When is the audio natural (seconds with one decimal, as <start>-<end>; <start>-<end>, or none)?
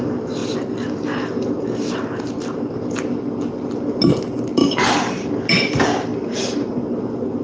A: 0.0-4.6; 5.3-6.1; 6.8-7.4